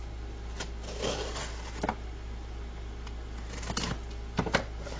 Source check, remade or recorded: recorded